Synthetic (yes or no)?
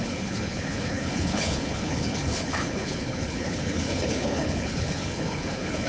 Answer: yes